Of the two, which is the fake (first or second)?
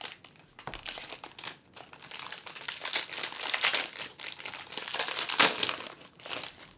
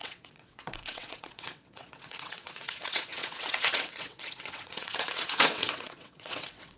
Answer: second